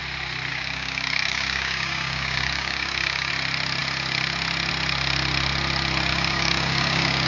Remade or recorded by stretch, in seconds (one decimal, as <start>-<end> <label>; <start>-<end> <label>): 0.0-0.5 recorded; 0.5-3.3 remade; 3.3-6.1 recorded; 6.1-7.3 remade